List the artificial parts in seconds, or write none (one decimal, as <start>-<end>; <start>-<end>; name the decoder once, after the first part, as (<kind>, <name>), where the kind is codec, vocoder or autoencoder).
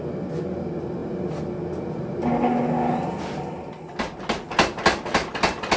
none